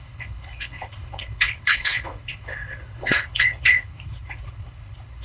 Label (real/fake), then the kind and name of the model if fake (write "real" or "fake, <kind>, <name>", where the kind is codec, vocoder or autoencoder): fake, codec, HILCodec